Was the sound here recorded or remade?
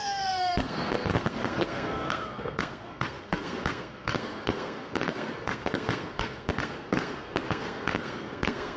remade